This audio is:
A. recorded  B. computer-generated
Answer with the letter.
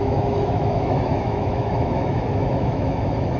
B